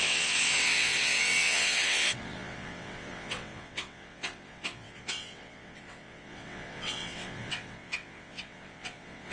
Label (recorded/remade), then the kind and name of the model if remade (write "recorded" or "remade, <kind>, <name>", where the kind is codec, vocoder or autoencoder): remade, vocoder, WaveNeXt